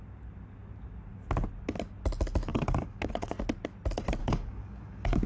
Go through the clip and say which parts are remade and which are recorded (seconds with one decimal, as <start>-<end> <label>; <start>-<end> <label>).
0.0-2.5 recorded; 2.5-3.3 remade; 3.3-4.2 recorded; 4.2-5.3 remade